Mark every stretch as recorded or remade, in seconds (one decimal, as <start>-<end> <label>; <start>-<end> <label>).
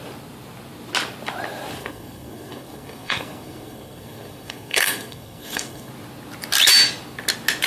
0.0-1.8 recorded; 1.8-5.9 remade; 5.9-7.7 recorded